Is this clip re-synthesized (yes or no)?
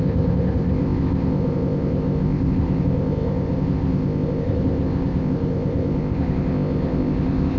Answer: yes